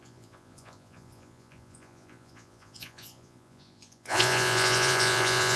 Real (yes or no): no